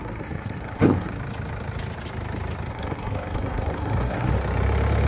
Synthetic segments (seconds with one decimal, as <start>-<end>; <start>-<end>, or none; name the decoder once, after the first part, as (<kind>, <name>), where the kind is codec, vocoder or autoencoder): 0.0-1.1 (codec, SNAC); 2.7-4.3